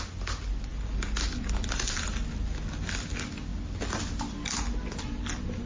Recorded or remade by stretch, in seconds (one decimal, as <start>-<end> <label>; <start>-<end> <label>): 0.0-5.7 recorded